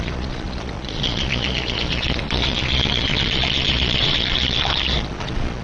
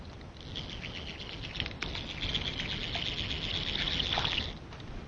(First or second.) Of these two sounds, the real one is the second